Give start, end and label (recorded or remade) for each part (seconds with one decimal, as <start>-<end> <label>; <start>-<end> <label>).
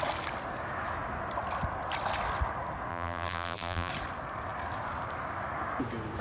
0.0-2.9 recorded; 2.9-3.9 remade; 3.9-6.2 recorded